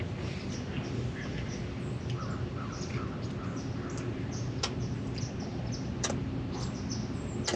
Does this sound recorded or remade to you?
recorded